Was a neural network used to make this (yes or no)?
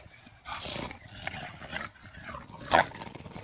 yes